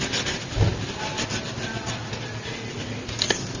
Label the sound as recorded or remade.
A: recorded